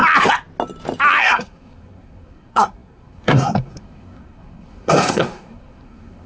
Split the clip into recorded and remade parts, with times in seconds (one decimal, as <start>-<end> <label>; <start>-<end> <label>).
0.0-1.2 recorded; 1.2-6.3 remade